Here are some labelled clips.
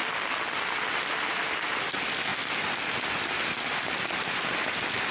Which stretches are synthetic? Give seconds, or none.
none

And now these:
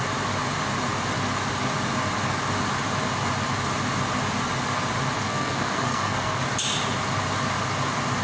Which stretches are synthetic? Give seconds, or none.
5.2-6.4 (codec, SNAC)

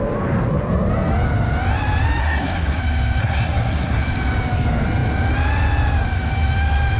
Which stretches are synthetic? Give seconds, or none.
2.2-2.8 (codec, SNAC); 3.2-4.0

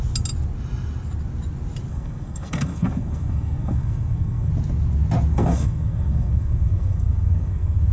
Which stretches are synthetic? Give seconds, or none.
1.9-4.5 (codec, SNAC); 5.3-7.9

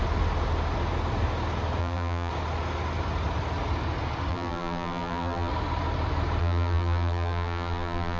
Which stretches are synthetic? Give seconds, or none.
1.8-2.3 (vocoder, BigVGAN v2); 4.3-5.5; 6.4-8.2

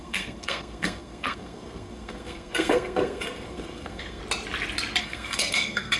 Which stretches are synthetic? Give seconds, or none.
0.0-4.2 (codec, SNAC); 5.0-6.0

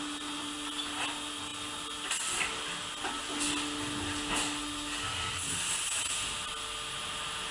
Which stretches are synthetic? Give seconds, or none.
none